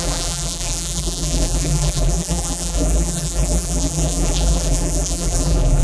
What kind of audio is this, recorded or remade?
remade